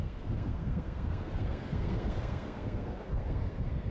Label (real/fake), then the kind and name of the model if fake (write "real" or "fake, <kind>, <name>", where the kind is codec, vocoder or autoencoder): fake, codec, SNAC